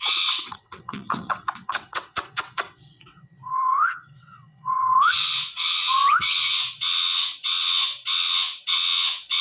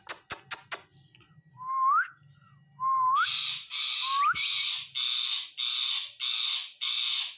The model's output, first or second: first